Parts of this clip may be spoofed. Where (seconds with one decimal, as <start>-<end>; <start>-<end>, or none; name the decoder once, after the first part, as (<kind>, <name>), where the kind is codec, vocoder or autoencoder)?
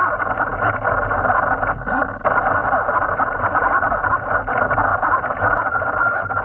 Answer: 2.6-4.3 (vocoder, BigVGAN v2); 4.9-5.4